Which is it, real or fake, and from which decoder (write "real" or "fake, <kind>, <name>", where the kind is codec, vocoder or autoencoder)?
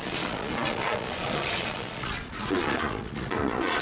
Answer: fake, vocoder, Vocos